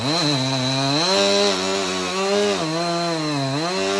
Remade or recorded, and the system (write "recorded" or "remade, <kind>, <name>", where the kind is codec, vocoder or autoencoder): recorded